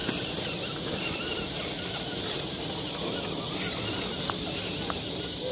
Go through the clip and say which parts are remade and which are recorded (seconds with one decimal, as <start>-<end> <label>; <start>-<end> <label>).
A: 0.0-5.5 recorded